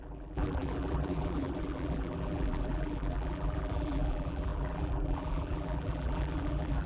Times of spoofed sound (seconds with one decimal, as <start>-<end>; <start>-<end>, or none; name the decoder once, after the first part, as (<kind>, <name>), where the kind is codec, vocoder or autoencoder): 0.0-6.9 (vocoder, BigVGAN v2)